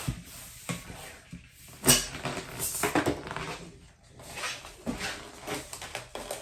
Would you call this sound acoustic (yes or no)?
yes